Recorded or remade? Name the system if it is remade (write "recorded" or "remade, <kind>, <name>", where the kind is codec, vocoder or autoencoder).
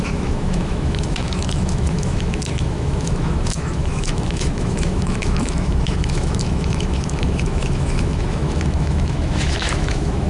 remade, autoencoder, DAC-VAE